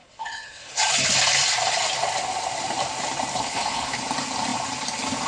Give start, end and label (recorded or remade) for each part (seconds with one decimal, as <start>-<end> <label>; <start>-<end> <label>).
0.0-0.8 remade; 0.8-3.3 recorded; 3.3-4.0 remade; 4.0-5.3 recorded